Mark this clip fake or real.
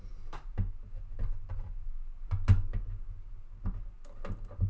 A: real